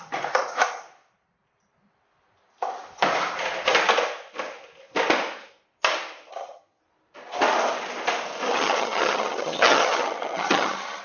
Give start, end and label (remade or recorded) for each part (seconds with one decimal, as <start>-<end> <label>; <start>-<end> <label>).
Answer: 0.0-6.3 recorded; 6.3-6.8 remade; 6.8-8.5 recorded; 8.5-11.0 remade